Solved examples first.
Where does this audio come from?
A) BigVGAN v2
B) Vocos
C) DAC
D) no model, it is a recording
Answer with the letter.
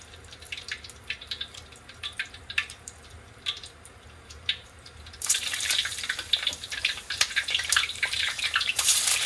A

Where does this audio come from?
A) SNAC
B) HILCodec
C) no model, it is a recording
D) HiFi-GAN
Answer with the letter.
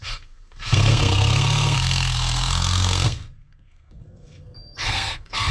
A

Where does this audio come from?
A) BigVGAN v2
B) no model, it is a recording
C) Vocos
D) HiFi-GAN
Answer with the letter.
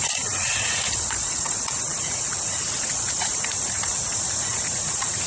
C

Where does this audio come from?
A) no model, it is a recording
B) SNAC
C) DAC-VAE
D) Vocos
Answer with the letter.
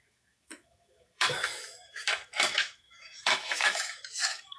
C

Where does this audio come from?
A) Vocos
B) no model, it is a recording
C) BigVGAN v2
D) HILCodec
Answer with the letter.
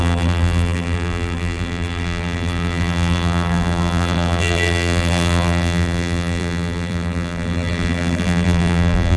C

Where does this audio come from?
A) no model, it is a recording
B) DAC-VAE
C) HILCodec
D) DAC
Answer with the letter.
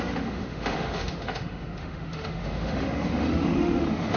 B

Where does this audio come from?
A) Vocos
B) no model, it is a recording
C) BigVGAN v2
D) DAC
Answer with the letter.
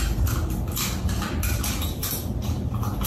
B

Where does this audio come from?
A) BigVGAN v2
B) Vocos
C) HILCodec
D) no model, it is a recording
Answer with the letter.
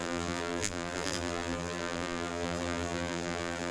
A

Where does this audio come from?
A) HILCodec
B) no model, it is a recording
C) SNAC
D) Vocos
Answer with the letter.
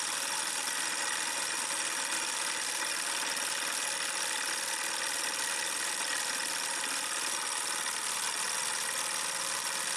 B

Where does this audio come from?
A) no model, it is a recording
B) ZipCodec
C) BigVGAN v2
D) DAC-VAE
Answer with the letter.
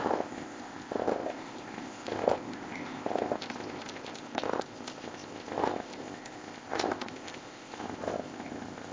B